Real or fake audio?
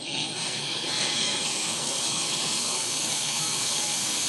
fake